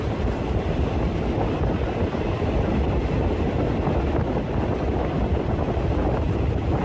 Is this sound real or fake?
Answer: real